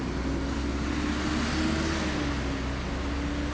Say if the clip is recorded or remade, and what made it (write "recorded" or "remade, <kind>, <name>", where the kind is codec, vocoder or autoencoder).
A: recorded